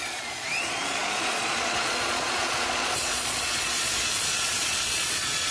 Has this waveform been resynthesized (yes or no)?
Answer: yes